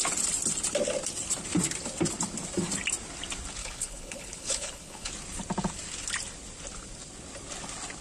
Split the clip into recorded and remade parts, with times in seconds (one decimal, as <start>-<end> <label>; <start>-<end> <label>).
0.0-3.6 recorded; 3.6-5.1 remade; 5.1-8.0 recorded